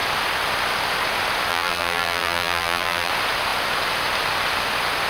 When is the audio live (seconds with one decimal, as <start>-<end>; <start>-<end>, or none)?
0.0-1.5; 3.1-5.1